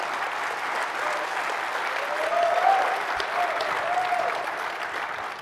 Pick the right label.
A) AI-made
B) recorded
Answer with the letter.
B